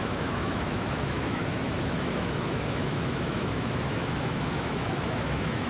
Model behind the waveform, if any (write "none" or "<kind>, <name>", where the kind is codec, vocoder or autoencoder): autoencoder, DAC-VAE